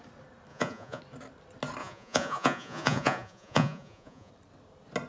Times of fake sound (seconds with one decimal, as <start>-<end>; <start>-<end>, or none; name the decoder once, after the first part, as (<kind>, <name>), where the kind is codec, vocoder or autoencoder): 0.5-1.0 (vocoder, Vocos); 1.8-4.3